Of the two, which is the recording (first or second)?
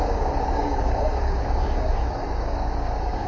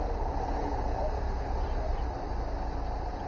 second